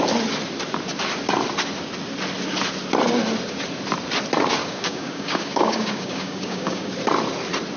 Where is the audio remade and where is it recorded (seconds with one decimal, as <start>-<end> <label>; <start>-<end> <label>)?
0.0-4.6 recorded; 4.6-6.9 remade; 6.9-7.8 recorded